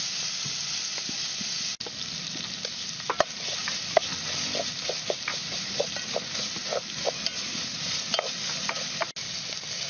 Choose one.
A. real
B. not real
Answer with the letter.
A